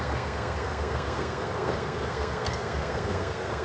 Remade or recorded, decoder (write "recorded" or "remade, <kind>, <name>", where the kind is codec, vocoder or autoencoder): remade, codec, SNAC